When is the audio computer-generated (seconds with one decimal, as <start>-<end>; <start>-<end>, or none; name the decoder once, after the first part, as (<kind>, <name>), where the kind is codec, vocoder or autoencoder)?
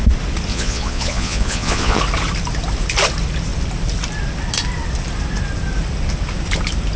0.5-2.0 (vocoder, Vocos)